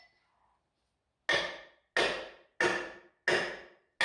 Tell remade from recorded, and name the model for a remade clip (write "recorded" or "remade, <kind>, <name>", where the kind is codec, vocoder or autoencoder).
recorded